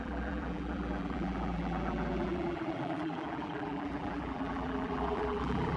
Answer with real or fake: fake